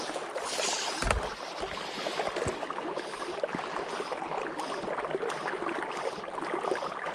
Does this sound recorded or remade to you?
recorded